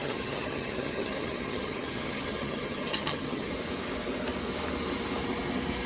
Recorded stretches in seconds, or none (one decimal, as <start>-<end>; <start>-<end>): 3.5-5.9